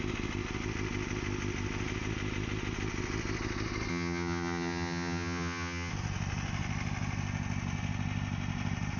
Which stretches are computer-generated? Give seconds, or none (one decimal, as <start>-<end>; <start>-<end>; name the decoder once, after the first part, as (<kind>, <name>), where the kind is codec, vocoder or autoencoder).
3.9-5.9 (vocoder, HiFi-GAN)